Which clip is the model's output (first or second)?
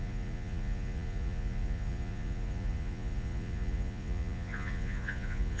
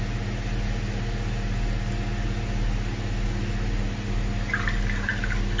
first